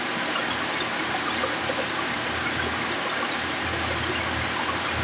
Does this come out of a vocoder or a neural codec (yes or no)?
no